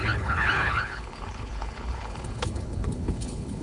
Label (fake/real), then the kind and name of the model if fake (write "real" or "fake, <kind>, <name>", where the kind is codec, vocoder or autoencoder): fake, codec, HILCodec